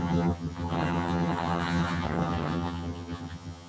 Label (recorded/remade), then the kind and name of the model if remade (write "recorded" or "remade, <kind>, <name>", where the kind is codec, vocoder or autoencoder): remade, vocoder, HiFi-GAN